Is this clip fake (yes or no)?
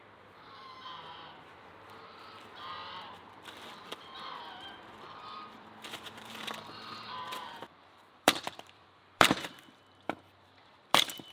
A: yes